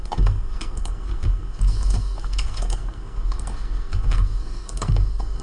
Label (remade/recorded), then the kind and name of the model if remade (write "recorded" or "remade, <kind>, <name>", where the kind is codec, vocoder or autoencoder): remade, codec, SNAC